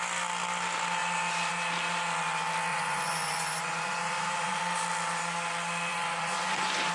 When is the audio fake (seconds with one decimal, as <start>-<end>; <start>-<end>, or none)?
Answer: 2.7-4.6; 5.9-6.9

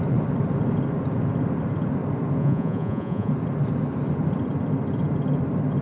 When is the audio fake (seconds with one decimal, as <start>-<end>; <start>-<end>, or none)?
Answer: 2.4-3.3